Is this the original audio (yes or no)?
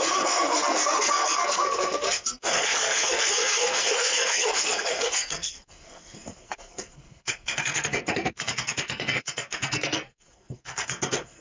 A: no